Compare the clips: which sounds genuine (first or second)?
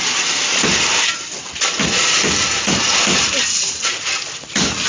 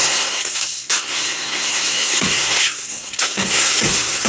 first